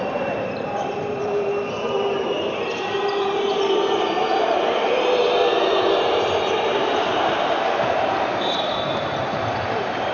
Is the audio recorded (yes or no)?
no